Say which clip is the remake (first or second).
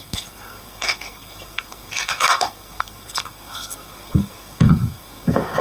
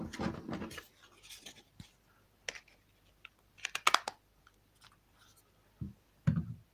first